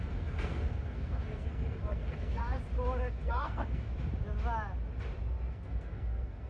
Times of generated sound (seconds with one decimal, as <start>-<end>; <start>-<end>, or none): 0.0-2.4; 3.1-3.9; 5.5-6.5